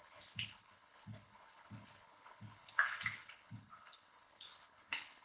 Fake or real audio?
fake